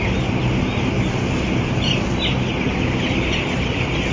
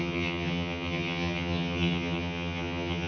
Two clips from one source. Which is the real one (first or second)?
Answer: first